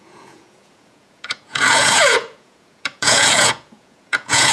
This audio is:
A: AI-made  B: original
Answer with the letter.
A